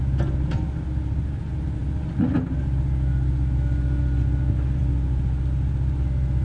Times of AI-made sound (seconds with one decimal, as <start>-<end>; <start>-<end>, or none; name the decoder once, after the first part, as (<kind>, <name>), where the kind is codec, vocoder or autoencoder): none